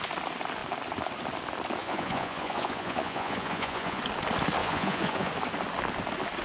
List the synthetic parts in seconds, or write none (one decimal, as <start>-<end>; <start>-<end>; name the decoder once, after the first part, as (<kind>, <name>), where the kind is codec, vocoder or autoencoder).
1.8-4.0 (vocoder, Vocos); 4.6-5.3